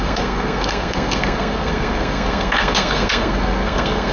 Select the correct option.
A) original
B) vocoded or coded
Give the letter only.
B